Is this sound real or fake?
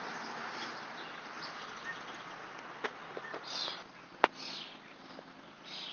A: real